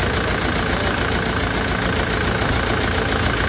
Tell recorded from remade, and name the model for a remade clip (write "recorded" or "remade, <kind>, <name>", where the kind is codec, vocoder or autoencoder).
recorded